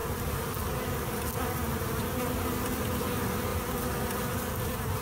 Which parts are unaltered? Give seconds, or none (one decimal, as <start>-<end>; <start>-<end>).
0.0-5.0